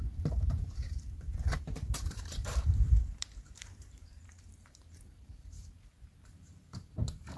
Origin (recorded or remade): remade